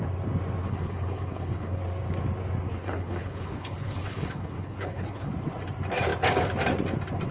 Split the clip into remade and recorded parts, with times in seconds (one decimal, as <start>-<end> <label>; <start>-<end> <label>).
0.0-0.6 recorded; 0.6-1.8 remade; 1.8-2.7 recorded; 2.7-5.3 remade; 5.3-7.3 recorded